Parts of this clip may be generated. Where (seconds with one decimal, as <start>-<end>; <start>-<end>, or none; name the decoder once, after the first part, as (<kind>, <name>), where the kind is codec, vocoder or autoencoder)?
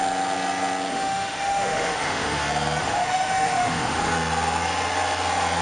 0.9-2.4 (autoencoder, DAC-VAE); 2.8-4.1